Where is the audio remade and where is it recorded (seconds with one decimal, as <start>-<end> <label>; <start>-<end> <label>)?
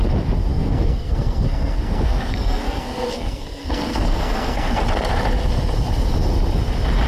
0.0-0.5 recorded; 0.5-4.8 remade; 4.8-7.1 recorded